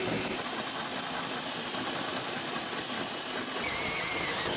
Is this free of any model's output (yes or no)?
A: no